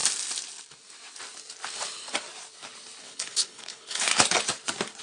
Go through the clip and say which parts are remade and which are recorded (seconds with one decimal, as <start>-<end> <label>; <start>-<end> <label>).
0.0-3.0 recorded; 3.0-4.1 remade; 4.1-5.0 recorded